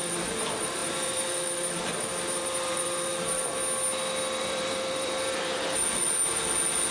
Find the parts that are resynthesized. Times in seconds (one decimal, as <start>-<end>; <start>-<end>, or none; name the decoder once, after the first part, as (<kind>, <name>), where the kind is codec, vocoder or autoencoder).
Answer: 0.0-3.6 (vocoder, BigVGAN v2); 4.4-6.9